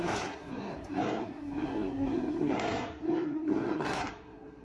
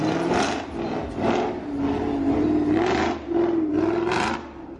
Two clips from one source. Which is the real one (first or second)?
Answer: second